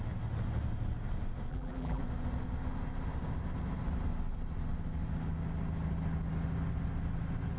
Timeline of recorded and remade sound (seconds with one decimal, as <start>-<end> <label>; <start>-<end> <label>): 0.0-1.5 recorded; 1.5-2.0 remade; 2.0-7.6 recorded